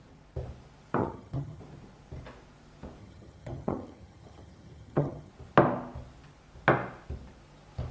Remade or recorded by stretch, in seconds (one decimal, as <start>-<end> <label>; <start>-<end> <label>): 0.0-1.0 recorded; 1.0-1.6 remade; 1.6-3.0 recorded; 3.0-5.3 remade; 5.3-7.9 recorded